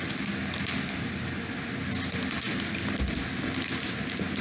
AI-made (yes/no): no